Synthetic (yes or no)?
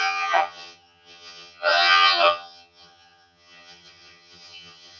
yes